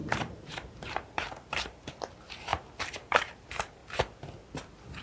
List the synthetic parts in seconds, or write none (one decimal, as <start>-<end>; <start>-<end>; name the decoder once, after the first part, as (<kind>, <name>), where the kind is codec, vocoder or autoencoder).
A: 0.0-1.9 (vocoder, BigVGAN v2); 2.5-3.2